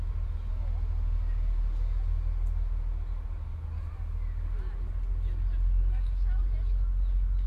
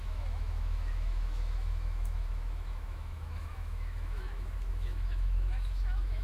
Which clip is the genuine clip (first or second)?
first